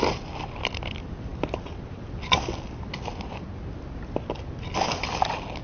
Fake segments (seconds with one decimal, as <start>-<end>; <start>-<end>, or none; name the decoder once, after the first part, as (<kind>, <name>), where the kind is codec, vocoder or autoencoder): none